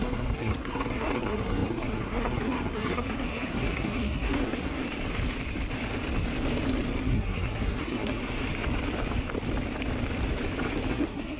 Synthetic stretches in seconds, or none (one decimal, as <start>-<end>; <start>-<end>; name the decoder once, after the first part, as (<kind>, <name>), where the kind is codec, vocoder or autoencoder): 0.0-4.8 (codec, SNAC); 7.0-8.2; 10.9-11.4